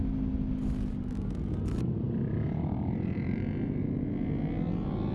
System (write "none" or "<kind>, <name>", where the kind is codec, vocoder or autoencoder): none